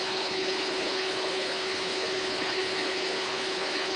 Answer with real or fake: fake